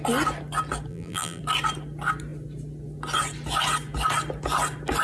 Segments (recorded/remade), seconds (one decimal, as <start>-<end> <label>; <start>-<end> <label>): 0.0-0.9 recorded; 0.9-1.4 remade; 1.4-5.0 recorded

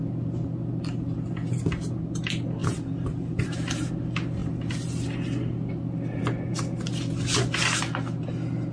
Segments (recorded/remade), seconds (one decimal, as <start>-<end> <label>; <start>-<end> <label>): 0.0-2.6 recorded; 2.6-3.9 remade; 3.9-8.7 recorded